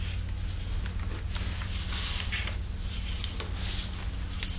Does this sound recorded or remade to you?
recorded